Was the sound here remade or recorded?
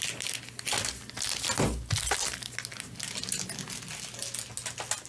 recorded